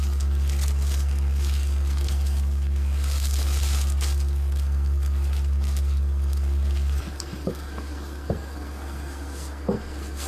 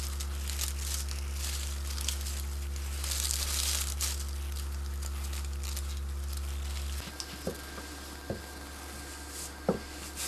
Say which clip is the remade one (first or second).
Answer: first